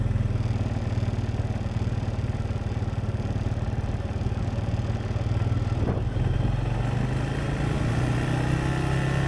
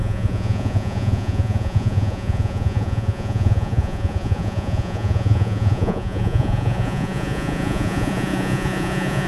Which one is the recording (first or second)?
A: first